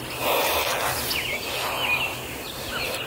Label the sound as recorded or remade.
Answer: recorded